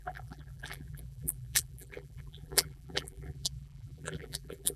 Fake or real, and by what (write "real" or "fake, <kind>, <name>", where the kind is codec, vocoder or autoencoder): fake, vocoder, BigVGAN v2